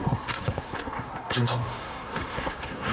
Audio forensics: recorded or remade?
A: remade